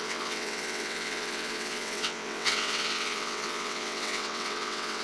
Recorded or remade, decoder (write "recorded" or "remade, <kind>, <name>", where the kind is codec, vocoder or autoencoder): remade, vocoder, WaveNeXt